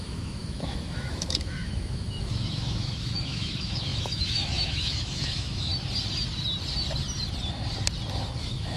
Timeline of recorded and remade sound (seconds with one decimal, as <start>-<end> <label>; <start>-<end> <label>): 0.0-5.7 remade; 5.7-8.4 recorded; 8.4-8.8 remade